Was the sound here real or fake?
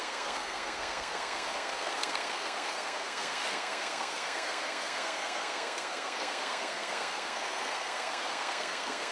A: fake